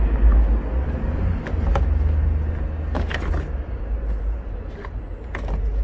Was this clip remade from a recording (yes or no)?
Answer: no